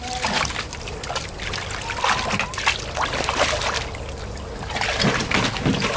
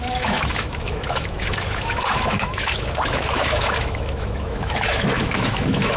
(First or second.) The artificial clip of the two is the second